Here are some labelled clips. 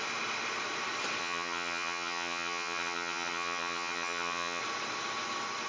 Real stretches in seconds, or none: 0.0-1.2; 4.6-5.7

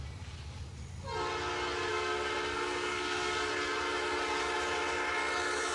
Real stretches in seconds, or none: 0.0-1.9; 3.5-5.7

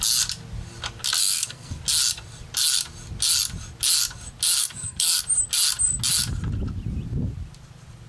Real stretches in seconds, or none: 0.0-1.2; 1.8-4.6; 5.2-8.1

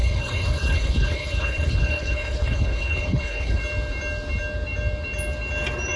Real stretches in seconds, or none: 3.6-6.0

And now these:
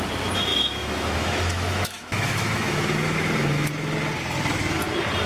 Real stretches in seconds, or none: 0.0-0.5; 3.7-5.3